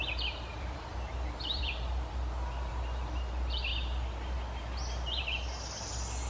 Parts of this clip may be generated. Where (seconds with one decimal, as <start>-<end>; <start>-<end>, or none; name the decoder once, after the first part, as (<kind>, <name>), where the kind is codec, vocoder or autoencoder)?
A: 0.5-2.7 (vocoder, BigVGAN v2)